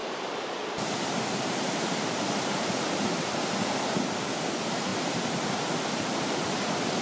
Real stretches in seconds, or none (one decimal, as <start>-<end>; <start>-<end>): 3.3-4.9; 5.5-7.0